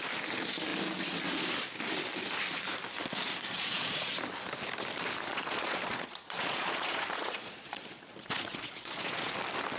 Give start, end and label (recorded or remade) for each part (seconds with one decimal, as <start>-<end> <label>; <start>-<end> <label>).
0.0-3.5 recorded; 3.5-4.1 remade; 4.1-5.3 recorded; 5.3-9.3 remade; 9.3-9.8 recorded